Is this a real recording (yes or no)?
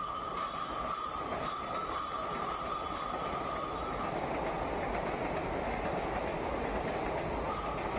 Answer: yes